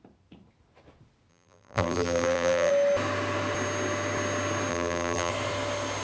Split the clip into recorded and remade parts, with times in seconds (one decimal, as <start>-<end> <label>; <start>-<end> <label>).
0.0-1.3 recorded; 1.3-2.7 remade; 2.7-4.7 recorded; 4.7-5.3 remade; 5.3-6.0 recorded